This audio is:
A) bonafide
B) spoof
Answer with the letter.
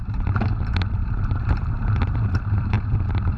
B